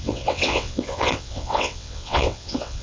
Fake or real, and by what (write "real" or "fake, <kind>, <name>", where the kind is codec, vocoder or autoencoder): fake, vocoder, WaveNeXt